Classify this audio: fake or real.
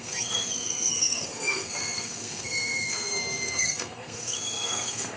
fake